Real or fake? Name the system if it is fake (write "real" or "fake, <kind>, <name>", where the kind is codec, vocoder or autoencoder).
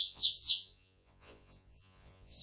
fake, vocoder, Vocos